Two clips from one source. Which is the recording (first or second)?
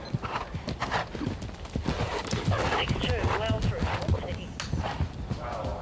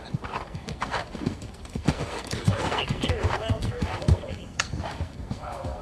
first